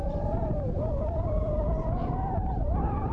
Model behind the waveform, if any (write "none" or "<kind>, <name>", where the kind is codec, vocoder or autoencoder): none